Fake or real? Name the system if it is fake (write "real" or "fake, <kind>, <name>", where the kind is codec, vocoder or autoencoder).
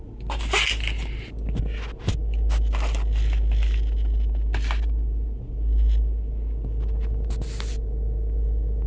real